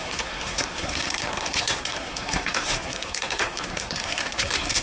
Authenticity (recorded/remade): remade